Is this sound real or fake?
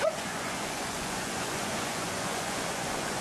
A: fake